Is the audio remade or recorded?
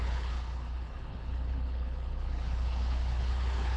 remade